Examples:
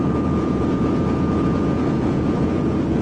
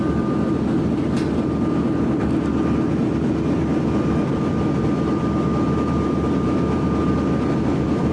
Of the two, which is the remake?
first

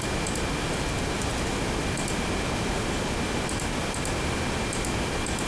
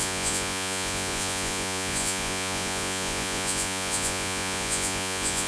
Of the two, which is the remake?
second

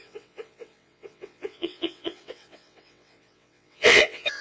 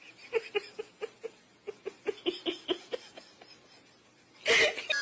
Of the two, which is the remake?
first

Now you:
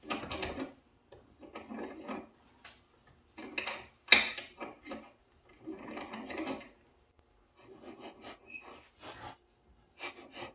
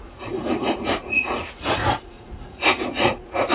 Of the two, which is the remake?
second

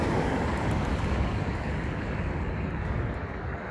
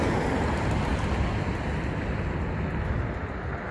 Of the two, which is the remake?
first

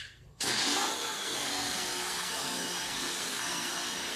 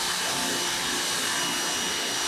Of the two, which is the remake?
first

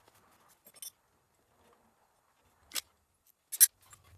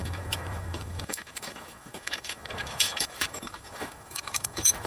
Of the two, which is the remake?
second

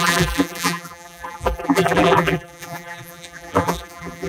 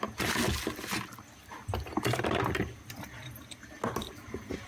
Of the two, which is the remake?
first